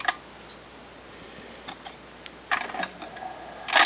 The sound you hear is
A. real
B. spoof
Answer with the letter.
A